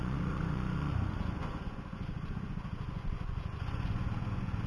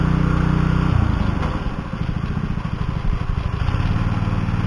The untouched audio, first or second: second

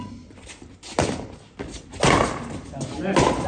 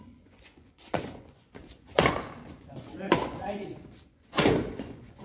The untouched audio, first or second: first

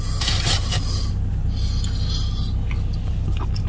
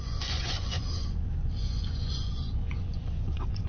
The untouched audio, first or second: first